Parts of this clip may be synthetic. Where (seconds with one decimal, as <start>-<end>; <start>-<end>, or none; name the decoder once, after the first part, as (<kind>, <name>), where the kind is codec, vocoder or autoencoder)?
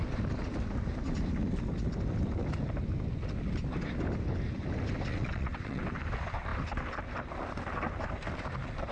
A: 5.1-5.8 (vocoder, WaveNeXt)